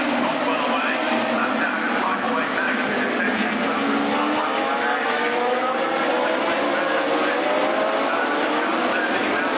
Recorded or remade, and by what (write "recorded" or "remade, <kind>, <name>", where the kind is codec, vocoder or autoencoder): recorded